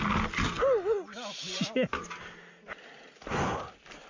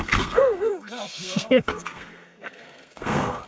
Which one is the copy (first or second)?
second